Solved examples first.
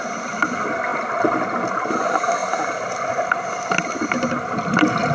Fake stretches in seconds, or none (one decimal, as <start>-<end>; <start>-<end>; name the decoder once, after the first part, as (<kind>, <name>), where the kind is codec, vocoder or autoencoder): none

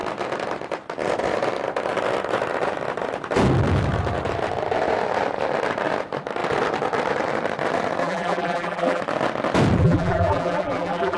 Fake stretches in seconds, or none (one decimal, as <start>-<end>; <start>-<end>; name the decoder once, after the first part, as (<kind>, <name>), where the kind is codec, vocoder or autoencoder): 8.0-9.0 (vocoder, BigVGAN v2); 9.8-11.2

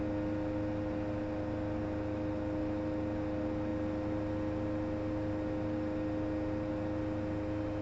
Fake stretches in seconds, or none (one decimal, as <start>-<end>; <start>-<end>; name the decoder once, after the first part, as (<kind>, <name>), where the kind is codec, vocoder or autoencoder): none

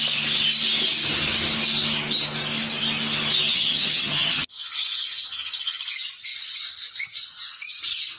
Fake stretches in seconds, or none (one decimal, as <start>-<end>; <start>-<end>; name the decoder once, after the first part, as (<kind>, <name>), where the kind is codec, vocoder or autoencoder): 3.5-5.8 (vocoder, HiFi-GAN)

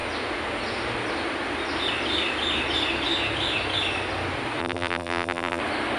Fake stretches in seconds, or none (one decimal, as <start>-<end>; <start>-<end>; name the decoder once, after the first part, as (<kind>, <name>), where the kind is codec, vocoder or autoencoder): 4.6-5.6 (vocoder, BigVGAN v2)